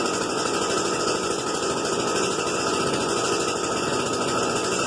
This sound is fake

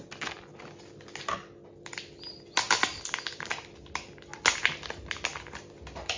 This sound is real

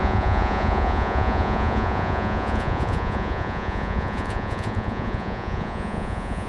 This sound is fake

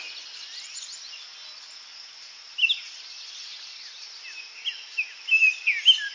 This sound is real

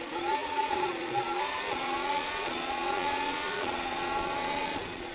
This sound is fake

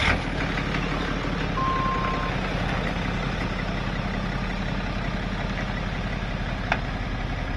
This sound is real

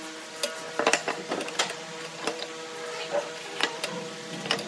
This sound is real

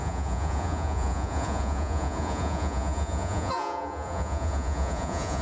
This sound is fake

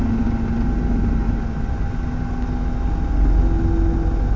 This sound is real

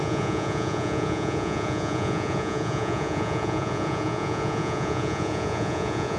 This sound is fake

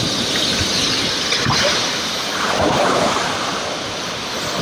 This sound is real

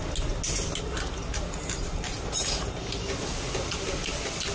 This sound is real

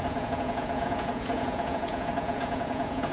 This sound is fake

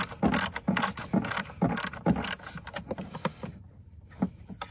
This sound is real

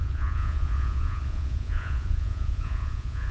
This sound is fake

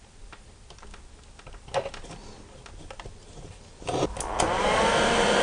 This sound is real